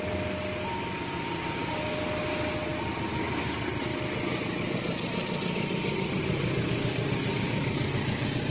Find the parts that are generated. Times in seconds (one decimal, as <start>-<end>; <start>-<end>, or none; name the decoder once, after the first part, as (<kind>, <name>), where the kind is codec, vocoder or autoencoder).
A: none